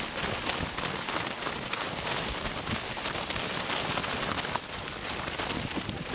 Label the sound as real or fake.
real